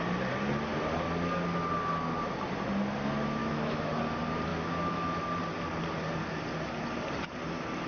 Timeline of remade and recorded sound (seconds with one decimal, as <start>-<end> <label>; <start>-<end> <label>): 0.0-3.4 recorded; 3.4-4.0 remade; 4.0-4.5 recorded; 4.5-5.2 remade; 5.2-7.9 recorded